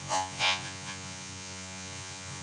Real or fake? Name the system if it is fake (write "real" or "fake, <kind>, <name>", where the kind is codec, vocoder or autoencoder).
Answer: fake, vocoder, Vocos